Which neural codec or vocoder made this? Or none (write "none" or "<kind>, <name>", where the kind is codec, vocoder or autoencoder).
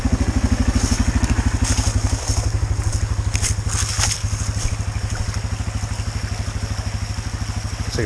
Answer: none